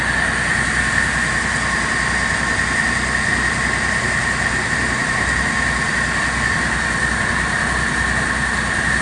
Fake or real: real